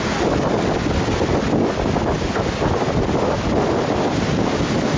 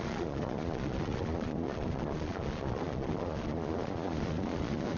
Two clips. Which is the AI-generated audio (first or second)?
second